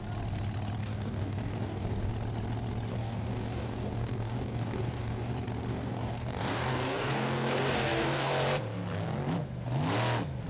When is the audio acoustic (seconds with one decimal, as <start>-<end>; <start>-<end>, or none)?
0.0-0.8; 2.1-2.9; 5.3-5.7; 8.3-10.5